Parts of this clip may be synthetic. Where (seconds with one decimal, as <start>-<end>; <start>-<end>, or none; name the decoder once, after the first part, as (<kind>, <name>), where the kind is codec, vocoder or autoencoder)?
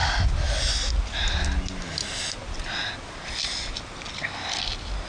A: none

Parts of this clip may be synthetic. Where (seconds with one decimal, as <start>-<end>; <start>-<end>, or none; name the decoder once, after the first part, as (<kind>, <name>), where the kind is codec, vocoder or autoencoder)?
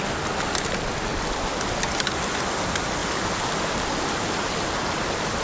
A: none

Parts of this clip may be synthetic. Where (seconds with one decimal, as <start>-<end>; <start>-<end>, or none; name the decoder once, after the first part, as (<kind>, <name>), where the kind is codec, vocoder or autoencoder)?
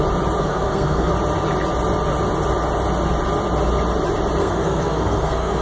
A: 0.4-1.1 (codec, SNAC); 4.4-5.6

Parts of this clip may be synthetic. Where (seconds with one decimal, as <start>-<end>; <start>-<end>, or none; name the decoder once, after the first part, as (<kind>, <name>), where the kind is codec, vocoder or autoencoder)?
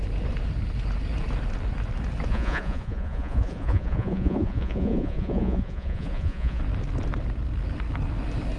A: 2.3-6.6 (vocoder, Vocos)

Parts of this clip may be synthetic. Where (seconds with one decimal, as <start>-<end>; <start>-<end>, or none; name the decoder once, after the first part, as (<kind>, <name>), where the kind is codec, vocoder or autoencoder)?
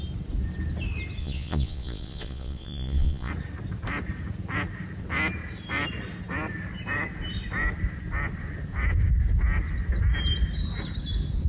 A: 1.2-3.3 (vocoder, Vocos)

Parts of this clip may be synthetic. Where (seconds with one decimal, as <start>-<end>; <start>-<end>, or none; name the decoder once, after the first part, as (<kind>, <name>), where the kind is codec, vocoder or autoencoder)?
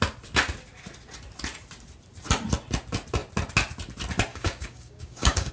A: 4.3-5.5 (codec, DAC)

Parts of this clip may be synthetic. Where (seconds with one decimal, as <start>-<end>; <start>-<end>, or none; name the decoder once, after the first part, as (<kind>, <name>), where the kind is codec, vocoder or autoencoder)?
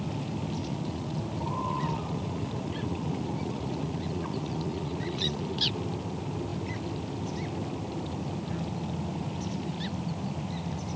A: 0.6-1.2 (vocoder, Vocos); 1.6-5.7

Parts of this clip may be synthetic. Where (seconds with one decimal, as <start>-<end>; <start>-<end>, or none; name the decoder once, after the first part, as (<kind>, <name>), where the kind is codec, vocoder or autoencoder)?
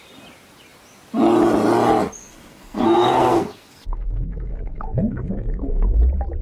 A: 2.2-6.0 (codec, SNAC)